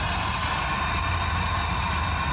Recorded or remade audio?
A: recorded